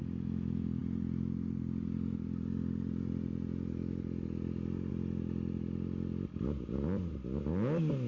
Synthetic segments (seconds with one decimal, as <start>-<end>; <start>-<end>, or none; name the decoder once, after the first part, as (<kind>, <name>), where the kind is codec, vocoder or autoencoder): none